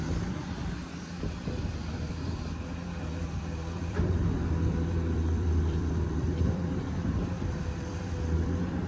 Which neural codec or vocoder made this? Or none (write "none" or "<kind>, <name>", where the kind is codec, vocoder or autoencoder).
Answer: vocoder, BigVGAN v2